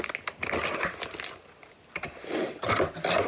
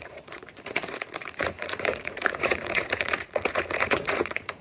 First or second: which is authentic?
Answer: first